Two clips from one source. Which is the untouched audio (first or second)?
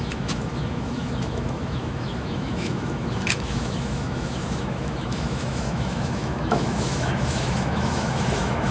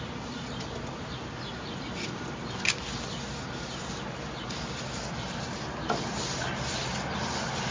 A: second